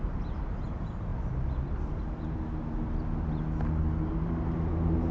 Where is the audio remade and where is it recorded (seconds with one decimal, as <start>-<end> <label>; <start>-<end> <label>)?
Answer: 0.0-5.1 recorded